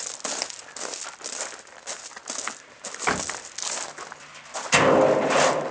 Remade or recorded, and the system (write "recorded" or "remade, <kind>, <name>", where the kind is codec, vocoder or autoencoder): recorded